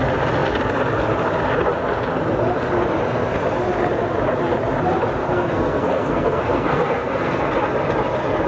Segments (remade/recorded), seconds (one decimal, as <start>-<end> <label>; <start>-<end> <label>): 0.0-5.2 recorded; 5.2-7.4 remade; 7.4-8.5 recorded